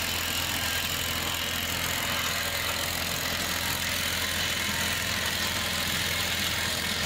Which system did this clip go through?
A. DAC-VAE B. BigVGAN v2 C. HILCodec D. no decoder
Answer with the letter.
D